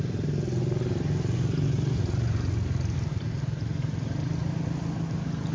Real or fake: real